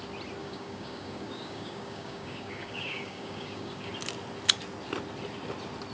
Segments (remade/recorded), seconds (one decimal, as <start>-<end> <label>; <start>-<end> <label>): 0.0-0.4 recorded; 0.4-3.9 remade; 3.9-5.9 recorded